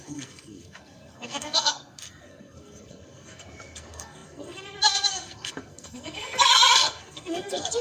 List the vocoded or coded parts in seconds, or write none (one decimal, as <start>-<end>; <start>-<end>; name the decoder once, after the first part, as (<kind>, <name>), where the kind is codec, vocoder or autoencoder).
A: 0.0-7.8 (codec, SNAC)